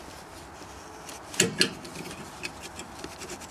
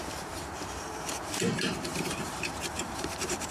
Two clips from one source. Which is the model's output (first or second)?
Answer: second